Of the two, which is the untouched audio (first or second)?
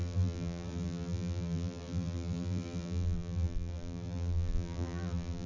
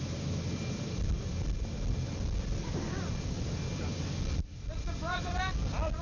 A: second